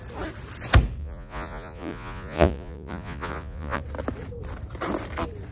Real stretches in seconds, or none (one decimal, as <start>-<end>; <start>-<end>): 0.0-1.0; 3.8-5.5